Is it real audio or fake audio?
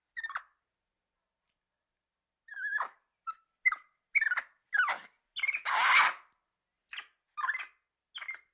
real